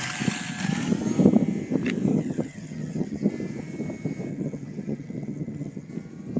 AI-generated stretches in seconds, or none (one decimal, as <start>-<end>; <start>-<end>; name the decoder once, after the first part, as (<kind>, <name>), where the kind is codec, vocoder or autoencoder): 2.1-3.3 (vocoder, HiFi-GAN); 4.3-5.9